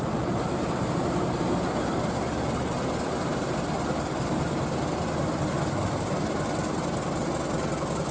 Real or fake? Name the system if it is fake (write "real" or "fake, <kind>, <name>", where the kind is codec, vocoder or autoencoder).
real